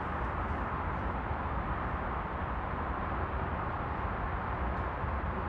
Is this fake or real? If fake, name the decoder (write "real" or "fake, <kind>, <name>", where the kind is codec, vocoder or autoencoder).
fake, vocoder, BigVGAN v2